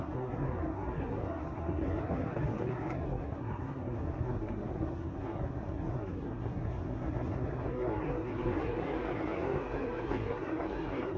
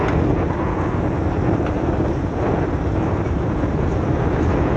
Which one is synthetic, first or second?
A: first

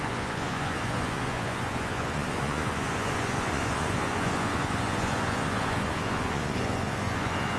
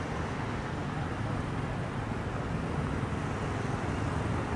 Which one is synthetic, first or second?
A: first